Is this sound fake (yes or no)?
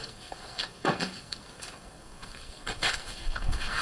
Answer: yes